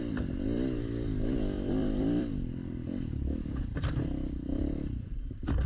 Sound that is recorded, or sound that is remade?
remade